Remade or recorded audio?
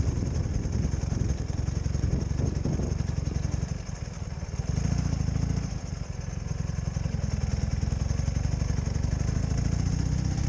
recorded